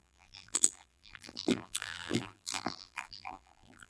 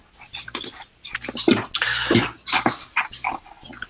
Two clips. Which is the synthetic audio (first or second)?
first